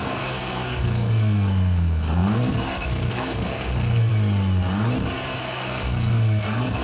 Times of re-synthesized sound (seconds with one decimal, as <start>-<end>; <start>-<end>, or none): 0.0-4.1; 5.4-6.8